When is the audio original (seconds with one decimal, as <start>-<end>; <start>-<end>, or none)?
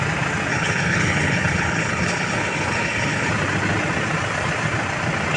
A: 0.0-0.5; 3.3-5.4